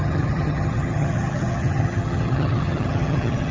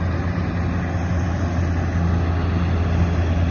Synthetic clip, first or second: first